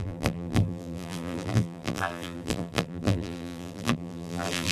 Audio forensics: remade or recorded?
remade